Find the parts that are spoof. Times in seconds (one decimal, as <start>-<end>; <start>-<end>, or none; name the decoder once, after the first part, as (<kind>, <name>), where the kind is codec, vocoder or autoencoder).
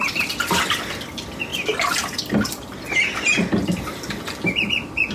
none